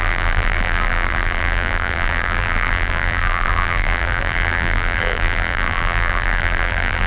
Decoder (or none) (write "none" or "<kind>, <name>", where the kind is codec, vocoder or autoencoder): vocoder, BigVGAN v2